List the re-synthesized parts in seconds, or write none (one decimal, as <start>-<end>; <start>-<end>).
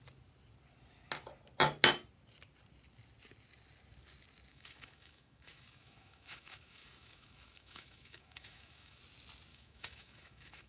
4.5-9.0; 9.5-10.7